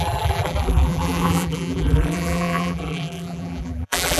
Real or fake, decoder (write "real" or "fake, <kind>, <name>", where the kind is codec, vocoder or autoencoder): fake, vocoder, BigVGAN v2